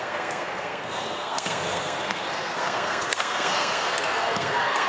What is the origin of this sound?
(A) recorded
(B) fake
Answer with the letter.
B